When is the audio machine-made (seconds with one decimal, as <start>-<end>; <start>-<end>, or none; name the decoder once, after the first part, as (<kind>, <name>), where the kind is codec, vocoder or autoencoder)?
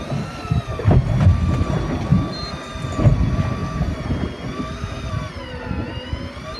none